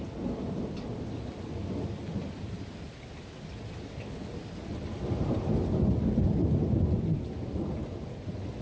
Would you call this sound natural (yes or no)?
yes